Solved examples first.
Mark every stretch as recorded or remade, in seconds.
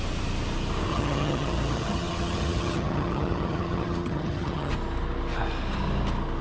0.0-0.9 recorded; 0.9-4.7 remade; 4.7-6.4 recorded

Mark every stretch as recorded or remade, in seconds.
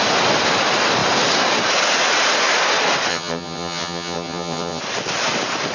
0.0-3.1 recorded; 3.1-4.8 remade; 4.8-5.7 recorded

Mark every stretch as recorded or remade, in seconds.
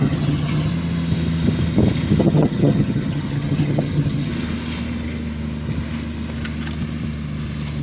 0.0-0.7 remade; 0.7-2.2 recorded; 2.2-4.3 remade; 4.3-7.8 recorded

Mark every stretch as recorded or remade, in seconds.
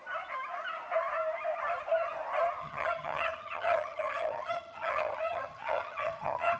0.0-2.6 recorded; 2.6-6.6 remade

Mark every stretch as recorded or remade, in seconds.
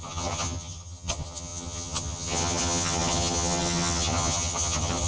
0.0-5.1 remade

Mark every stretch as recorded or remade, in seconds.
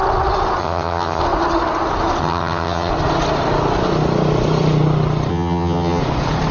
0.0-0.6 recorded; 0.6-1.2 remade; 1.2-2.2 recorded; 2.2-2.9 remade; 2.9-5.3 recorded; 5.3-6.0 remade; 6.0-6.5 recorded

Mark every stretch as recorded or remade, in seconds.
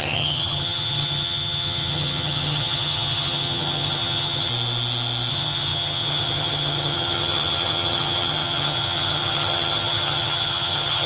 0.0-4.5 remade; 4.5-5.3 recorded; 5.3-11.1 remade